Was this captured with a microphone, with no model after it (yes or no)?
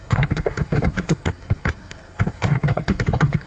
no